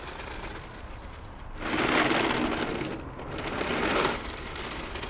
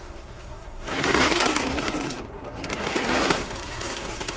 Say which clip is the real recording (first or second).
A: first